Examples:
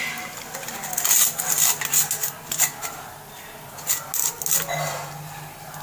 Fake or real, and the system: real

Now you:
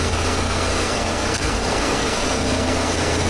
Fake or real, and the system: fake, codec, SNAC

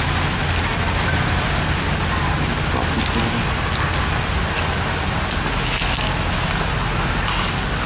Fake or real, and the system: real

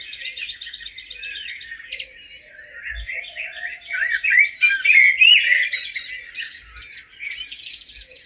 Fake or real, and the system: real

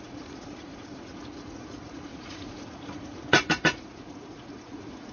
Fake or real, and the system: fake, vocoder, Vocos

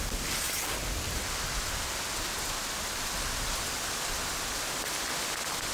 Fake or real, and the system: real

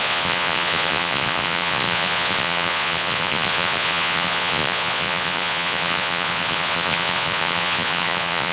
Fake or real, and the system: fake, vocoder, Vocos